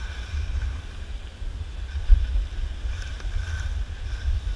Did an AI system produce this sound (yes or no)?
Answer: no